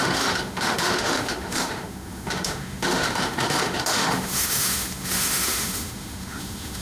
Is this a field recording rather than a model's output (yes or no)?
no